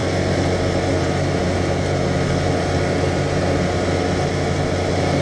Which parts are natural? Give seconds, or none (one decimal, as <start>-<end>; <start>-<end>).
0.0-5.2